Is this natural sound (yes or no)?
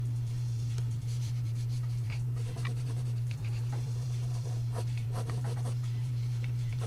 no